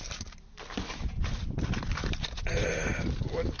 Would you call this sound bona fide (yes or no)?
no